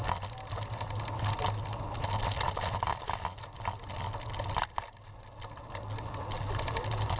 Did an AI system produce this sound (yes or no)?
no